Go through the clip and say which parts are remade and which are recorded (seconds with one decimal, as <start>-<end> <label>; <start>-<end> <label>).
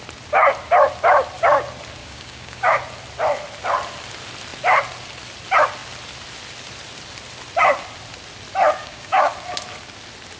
0.0-2.0 recorded; 2.0-2.8 remade; 2.8-8.8 recorded; 8.8-9.3 remade; 9.3-10.4 recorded